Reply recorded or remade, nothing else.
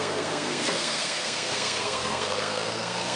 remade